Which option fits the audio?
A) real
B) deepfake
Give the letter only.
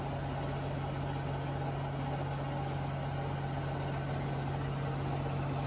A